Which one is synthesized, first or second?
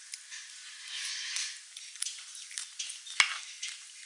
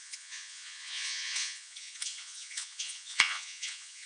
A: second